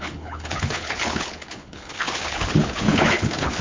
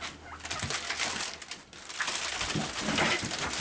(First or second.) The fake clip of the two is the first